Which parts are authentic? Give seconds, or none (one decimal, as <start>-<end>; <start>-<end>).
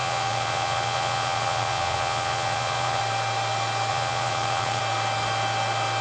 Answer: 3.0-3.9; 4.8-6.0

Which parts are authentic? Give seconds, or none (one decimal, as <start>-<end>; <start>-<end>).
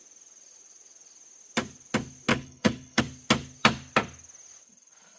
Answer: 0.0-2.3; 3.0-5.2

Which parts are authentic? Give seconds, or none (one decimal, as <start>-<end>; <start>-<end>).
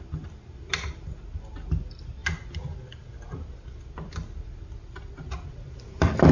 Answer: 0.0-6.3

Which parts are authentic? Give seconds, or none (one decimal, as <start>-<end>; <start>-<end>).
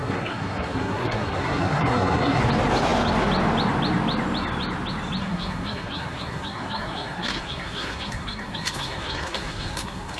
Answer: 2.4-5.2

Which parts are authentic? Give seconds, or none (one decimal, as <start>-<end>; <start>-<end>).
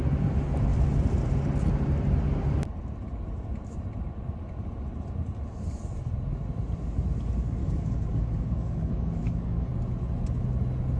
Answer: 0.0-7.6; 9.7-11.0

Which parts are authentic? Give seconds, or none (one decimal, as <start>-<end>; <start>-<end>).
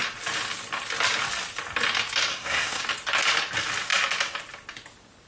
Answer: 0.0-2.3; 2.8-5.3